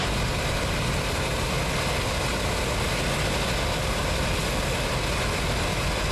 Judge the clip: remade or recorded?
remade